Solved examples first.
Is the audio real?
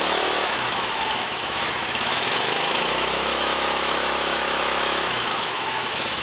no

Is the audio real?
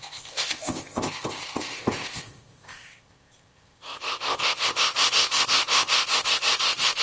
no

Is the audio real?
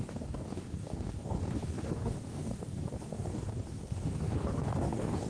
no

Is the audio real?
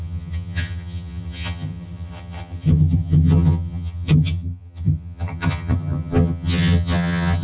no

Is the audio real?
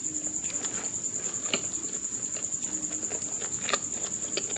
yes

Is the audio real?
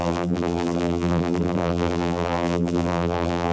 no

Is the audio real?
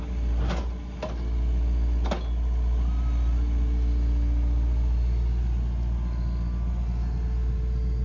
yes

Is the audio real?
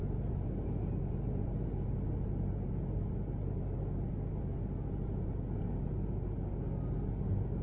yes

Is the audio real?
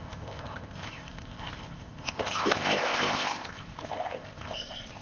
no